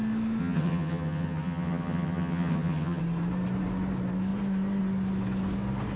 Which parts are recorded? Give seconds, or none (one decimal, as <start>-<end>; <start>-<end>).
0.0-0.4; 3.0-6.0